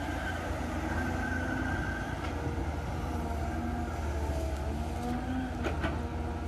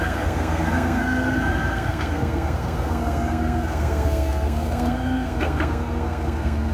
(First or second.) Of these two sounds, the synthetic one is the second